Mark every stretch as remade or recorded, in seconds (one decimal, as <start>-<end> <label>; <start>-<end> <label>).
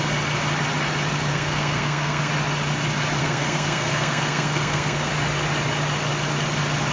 0.0-1.3 recorded; 1.3-2.3 remade; 2.3-3.2 recorded; 3.2-5.1 remade; 5.1-6.9 recorded